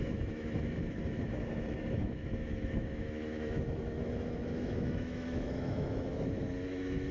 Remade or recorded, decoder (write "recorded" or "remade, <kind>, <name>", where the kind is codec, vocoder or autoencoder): remade, autoencoder, DAC-VAE